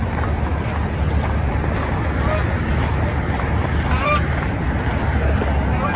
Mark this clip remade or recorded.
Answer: recorded